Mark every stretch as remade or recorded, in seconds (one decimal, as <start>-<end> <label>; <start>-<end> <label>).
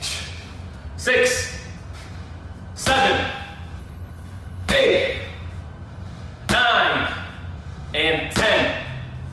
0.0-3.8 recorded; 3.8-5.2 remade; 5.2-9.3 recorded